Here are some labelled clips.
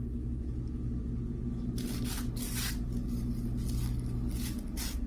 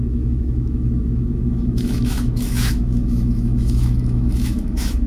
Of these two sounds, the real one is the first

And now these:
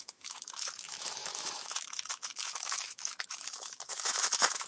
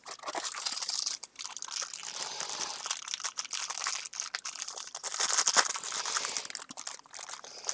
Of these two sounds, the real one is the second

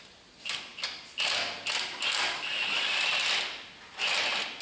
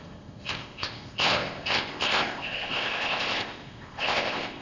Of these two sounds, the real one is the first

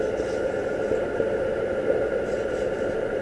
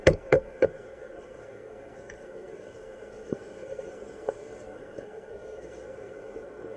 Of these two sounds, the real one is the first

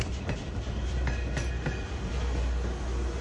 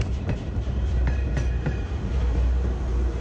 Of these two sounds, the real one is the first